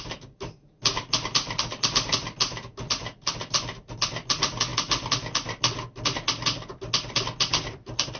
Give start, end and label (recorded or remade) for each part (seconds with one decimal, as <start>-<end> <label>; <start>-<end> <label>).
0.0-8.2 recorded